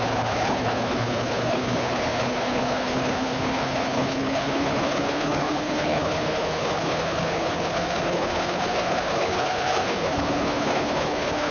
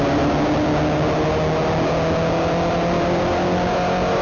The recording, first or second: second